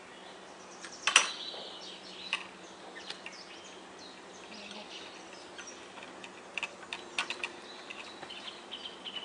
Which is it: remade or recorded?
recorded